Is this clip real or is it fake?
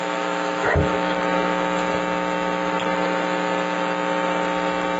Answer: fake